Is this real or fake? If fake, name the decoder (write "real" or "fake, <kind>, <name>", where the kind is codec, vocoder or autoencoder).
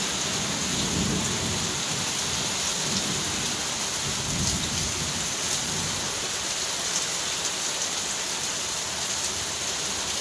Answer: real